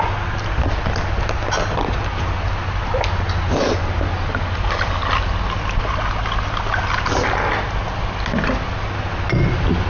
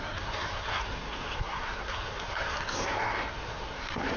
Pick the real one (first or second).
first